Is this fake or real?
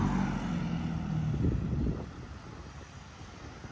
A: real